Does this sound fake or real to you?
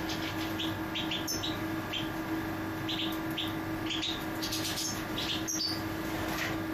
real